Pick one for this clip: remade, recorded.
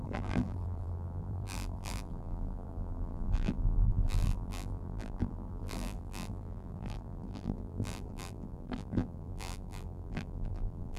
remade